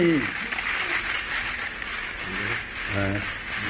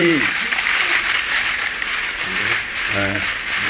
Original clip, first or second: first